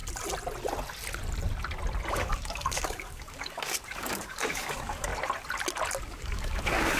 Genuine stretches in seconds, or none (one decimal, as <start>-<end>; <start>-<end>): 0.0-2.1; 5.1-6.0